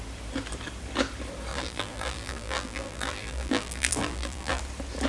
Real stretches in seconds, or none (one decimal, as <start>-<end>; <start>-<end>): 0.0-1.5; 4.6-5.1